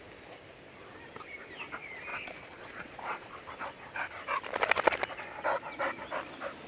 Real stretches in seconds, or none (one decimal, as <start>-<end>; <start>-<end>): 0.0-2.1; 3.3-6.7